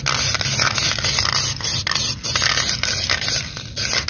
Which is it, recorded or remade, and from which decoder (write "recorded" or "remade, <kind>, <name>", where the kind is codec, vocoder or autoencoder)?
recorded